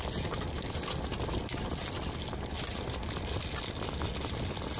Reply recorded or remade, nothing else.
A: recorded